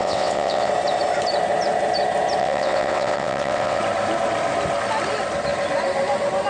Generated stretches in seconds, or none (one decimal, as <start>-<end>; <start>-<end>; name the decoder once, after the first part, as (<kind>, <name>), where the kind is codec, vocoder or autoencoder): 0.0-0.7 (vocoder, WaveNeXt); 2.4-3.8